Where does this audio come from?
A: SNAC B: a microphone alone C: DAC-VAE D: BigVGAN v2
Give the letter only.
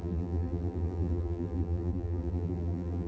D